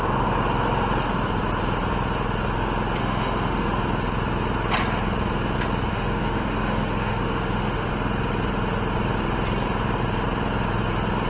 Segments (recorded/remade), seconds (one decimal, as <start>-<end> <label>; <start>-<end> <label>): 0.0-3.0 recorded; 3.0-3.8 remade; 3.8-5.9 recorded; 5.9-7.9 remade; 7.9-11.3 recorded